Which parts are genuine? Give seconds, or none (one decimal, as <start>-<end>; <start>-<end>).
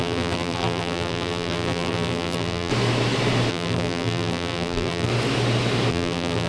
2.7-3.5; 5.1-5.9